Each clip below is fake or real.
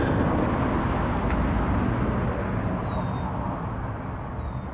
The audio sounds real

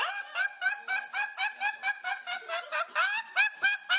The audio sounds real